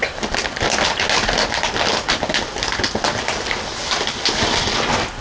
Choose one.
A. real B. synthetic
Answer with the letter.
A